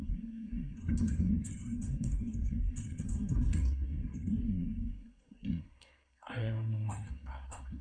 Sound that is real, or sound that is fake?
fake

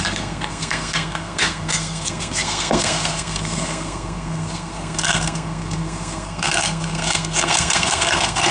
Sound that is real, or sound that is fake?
fake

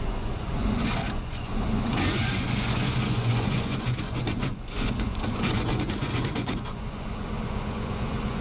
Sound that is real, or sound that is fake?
fake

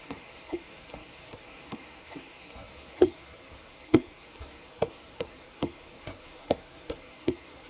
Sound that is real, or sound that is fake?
fake